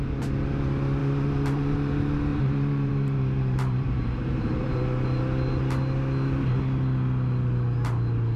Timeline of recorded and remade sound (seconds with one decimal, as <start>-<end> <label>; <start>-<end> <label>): 0.0-1.0 recorded; 1.0-1.9 remade; 1.9-2.3 recorded; 2.3-5.2 remade; 5.2-8.4 recorded